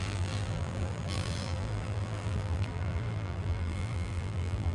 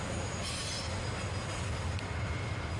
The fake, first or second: first